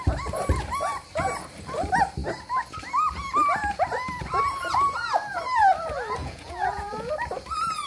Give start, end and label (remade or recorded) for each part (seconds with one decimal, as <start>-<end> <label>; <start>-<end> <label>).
0.0-6.2 recorded; 6.2-7.1 remade; 7.1-7.9 recorded